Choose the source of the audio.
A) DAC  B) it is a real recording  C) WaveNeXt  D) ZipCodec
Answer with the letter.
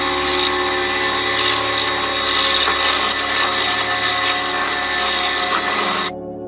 B